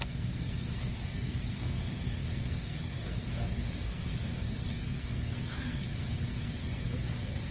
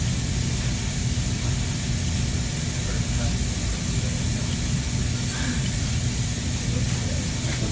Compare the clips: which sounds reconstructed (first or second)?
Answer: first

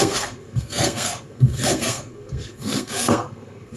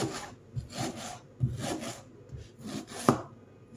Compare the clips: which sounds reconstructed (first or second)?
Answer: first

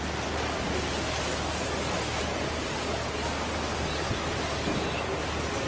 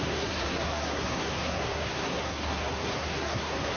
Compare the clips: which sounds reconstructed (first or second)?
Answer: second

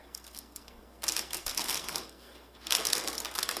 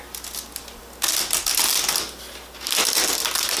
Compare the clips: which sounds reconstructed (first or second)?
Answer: first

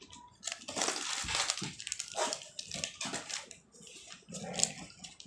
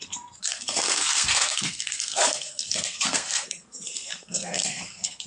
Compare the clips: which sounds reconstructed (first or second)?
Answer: second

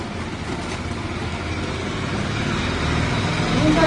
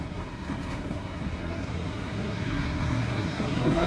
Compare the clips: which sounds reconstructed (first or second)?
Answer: second